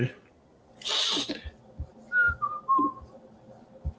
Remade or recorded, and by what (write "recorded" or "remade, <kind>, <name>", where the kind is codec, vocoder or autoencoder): recorded